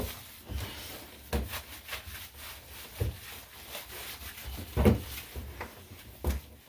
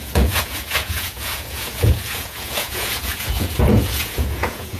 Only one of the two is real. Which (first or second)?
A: first